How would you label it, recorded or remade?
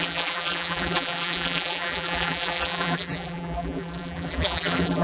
remade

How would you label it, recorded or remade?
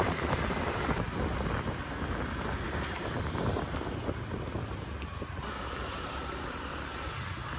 recorded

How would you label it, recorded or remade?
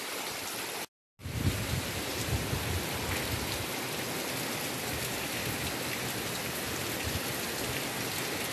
recorded